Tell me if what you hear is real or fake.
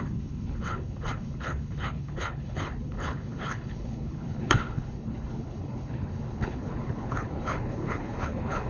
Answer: fake